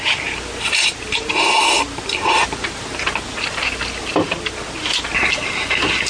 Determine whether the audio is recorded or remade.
recorded